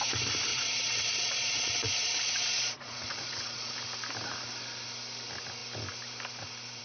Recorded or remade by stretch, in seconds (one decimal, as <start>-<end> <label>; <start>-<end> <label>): 0.0-0.5 recorded; 0.5-3.7 remade; 3.7-6.8 recorded